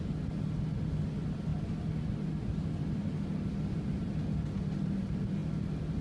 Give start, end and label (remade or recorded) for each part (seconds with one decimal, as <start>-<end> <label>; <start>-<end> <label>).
0.0-6.0 recorded

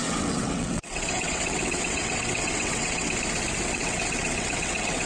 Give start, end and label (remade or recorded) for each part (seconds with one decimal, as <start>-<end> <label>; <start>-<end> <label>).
0.0-3.1 remade; 3.1-3.6 recorded; 3.6-5.1 remade